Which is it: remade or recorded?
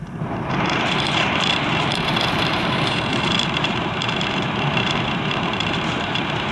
remade